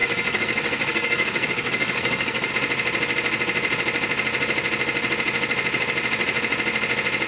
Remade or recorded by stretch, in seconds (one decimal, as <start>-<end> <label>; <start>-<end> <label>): 0.0-2.5 remade; 2.5-7.3 recorded

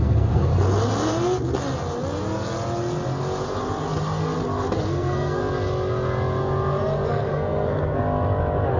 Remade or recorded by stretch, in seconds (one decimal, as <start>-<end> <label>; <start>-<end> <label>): 0.0-0.5 remade; 0.5-4.9 recorded; 4.9-5.4 remade; 5.4-7.1 recorded; 7.1-8.0 remade; 8.0-8.8 recorded